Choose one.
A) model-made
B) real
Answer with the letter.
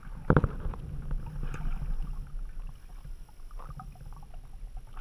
B